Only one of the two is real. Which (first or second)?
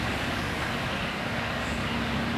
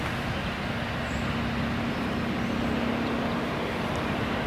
second